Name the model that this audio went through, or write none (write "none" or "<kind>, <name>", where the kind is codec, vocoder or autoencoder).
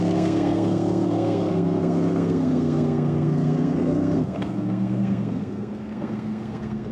codec, SNAC